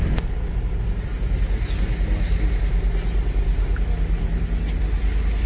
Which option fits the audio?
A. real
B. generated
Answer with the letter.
A